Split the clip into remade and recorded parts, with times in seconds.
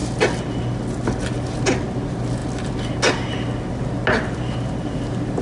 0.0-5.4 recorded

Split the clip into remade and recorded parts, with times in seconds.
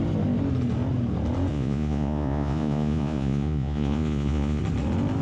0.0-1.5 recorded; 1.5-4.6 remade; 4.6-5.2 recorded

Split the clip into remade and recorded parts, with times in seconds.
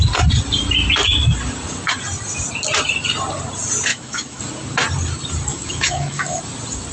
0.0-3.9 recorded; 3.9-4.4 remade; 4.4-5.5 recorded; 5.5-6.4 remade; 6.4-6.9 recorded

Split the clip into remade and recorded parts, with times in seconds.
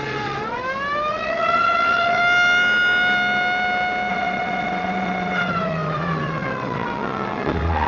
0.0-0.6 remade; 0.6-1.1 recorded; 1.1-2.2 remade; 2.2-4.1 recorded; 4.1-7.9 remade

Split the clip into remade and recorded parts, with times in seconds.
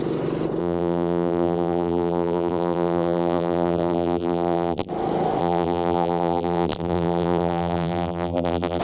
0.0-0.6 recorded; 0.6-4.9 remade; 4.9-5.4 recorded; 5.4-8.8 remade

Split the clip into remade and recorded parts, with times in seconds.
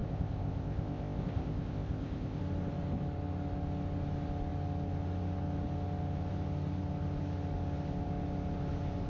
0.0-2.4 remade; 2.4-9.1 recorded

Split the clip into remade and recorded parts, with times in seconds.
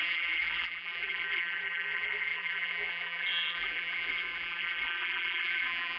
0.0-6.0 remade